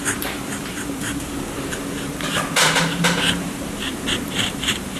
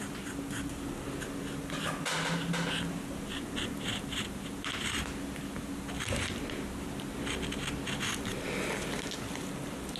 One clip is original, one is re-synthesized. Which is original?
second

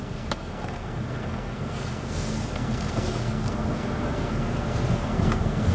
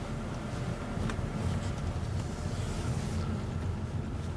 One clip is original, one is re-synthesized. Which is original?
second